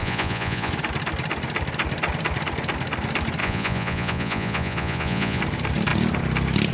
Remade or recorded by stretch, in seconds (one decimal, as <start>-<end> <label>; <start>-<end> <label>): 0.0-0.7 remade; 0.7-3.4 recorded; 3.4-5.4 remade; 5.4-6.7 recorded